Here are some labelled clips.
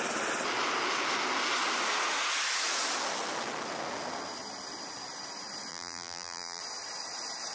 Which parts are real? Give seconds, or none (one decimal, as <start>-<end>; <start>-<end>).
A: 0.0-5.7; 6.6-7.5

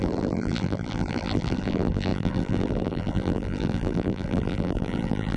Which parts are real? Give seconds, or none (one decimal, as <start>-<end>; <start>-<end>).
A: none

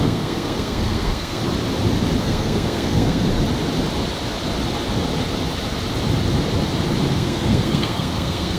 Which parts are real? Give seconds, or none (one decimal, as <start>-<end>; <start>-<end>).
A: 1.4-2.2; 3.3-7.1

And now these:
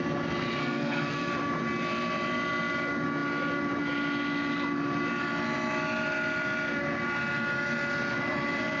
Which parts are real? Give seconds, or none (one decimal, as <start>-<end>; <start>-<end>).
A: 0.0-0.6; 1.3-8.8